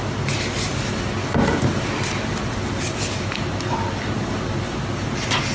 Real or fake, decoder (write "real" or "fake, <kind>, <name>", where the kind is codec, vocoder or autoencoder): real